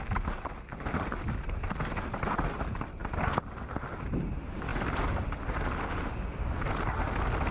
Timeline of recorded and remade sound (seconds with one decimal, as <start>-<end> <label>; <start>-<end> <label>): 0.0-7.5 recorded